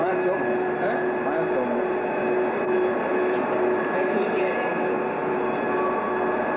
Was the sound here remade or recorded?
recorded